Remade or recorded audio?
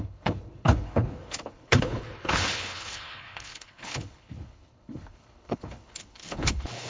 remade